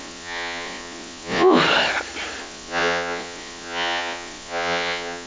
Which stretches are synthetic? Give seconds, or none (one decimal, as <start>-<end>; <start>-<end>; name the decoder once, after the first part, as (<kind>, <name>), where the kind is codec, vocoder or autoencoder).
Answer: 0.0-1.6 (vocoder, Vocos); 2.4-5.3